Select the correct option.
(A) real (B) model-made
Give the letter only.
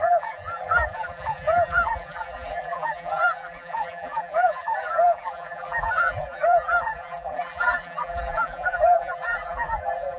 B